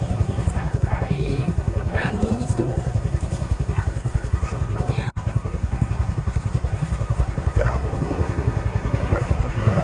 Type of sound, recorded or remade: remade